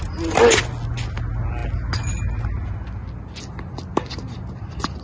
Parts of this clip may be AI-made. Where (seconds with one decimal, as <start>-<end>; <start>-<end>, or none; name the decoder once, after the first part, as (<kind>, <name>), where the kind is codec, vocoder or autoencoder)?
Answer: none